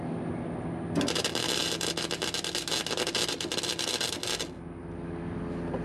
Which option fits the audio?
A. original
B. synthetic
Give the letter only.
A